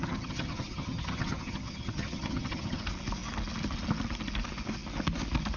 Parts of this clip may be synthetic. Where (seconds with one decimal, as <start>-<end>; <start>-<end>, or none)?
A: 0.0-2.8